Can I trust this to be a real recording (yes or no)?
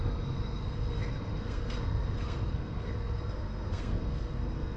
no